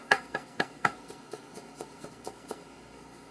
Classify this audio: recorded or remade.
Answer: remade